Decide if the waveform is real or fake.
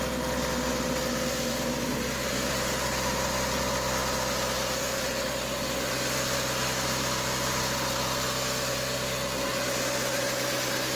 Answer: real